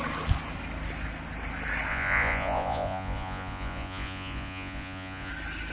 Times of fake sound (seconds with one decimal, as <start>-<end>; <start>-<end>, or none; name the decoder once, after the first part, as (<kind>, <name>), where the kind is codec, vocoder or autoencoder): 1.9-5.3 (vocoder, Vocos)